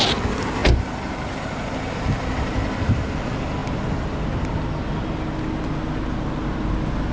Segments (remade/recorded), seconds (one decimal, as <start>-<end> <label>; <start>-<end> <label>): 0.0-7.1 recorded